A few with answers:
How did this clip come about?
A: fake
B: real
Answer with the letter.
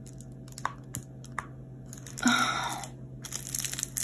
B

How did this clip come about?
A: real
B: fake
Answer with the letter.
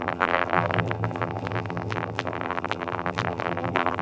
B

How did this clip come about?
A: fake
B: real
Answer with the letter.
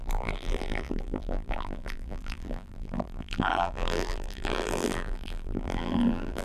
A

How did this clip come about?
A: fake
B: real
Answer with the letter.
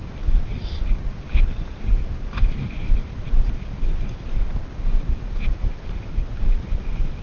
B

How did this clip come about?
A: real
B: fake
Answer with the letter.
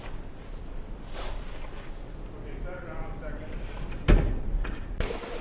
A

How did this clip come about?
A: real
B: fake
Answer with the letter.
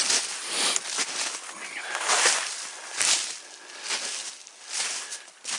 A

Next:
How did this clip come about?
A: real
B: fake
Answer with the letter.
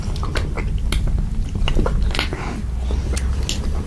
A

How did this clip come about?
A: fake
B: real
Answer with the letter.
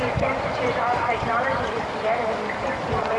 A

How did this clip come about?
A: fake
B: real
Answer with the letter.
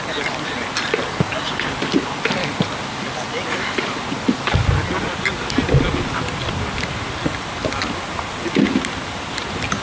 B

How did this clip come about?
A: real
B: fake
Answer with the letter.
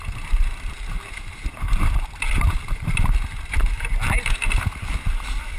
A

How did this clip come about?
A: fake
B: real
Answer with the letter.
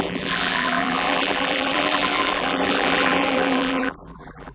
A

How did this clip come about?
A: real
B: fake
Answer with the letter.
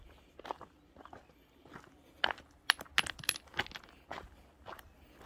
A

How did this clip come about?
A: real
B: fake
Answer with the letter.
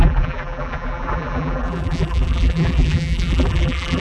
B